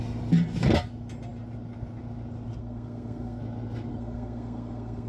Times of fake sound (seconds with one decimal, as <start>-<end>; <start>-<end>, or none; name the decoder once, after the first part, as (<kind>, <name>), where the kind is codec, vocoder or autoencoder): 2.6-3.4 (codec, SNAC); 3.9-5.1